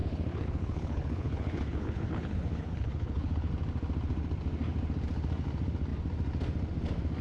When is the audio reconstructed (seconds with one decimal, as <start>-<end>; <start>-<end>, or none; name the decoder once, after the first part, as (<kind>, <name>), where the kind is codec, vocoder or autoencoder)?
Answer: 0.0-3.5 (codec, HILCodec)